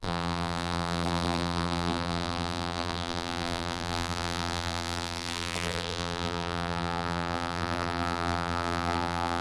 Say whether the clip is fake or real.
fake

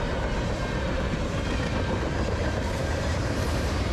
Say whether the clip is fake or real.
fake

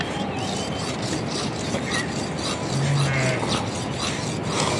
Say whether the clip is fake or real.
real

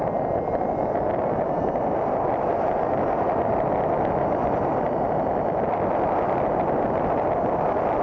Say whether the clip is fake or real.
real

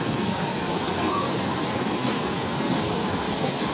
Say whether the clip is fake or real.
fake